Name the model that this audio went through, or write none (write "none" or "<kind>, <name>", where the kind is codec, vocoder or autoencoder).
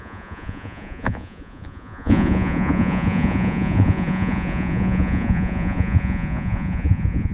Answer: vocoder, Vocos